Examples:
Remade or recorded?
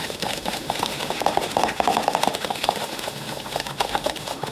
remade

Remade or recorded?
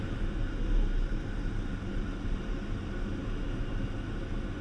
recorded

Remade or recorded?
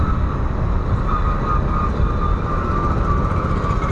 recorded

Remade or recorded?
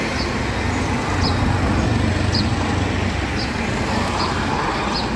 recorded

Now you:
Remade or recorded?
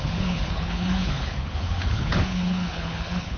remade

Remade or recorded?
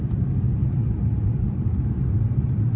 remade